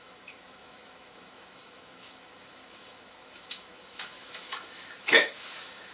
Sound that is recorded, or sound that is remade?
remade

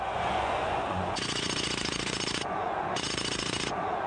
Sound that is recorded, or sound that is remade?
remade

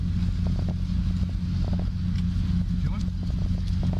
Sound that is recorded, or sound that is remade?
recorded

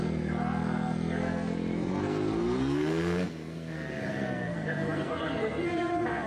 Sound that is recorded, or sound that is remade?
remade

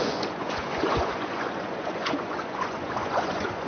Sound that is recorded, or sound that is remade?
remade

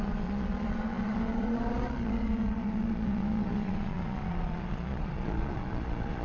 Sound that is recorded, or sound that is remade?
remade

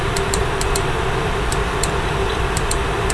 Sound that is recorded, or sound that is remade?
remade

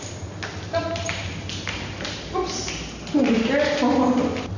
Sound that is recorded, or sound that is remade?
recorded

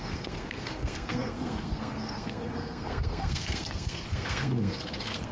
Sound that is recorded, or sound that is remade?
remade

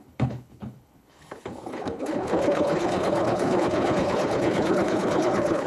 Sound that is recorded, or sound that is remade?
remade